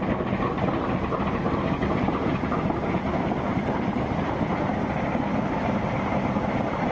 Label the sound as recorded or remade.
recorded